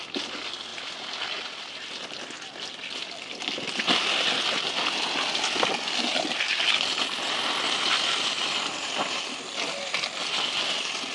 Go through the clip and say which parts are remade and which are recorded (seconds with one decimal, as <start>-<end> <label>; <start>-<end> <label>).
0.0-11.1 recorded